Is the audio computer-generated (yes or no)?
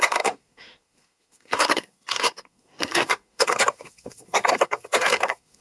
yes